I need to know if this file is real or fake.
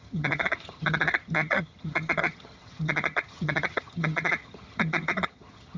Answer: fake